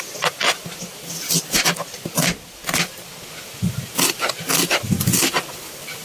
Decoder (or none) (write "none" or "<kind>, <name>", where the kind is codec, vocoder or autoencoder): none